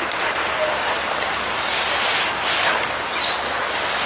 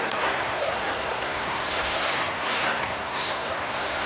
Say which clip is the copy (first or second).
second